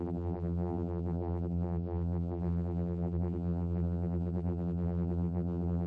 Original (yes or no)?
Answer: no